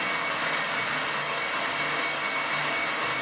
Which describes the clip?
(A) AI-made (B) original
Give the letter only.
B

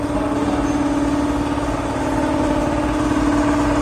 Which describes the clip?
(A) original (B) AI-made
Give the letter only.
A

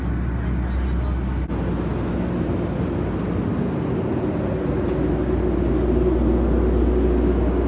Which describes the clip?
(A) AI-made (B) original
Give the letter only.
B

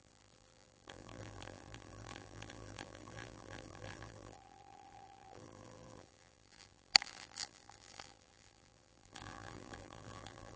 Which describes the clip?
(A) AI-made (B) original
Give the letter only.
A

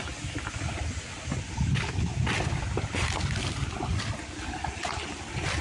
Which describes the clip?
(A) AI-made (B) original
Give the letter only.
A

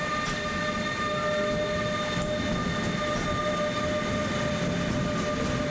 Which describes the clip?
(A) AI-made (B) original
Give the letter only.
B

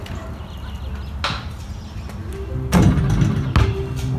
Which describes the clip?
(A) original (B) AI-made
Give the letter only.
A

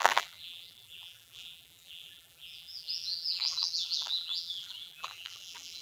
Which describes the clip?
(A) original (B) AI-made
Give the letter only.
B